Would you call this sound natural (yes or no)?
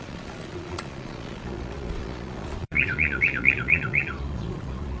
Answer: no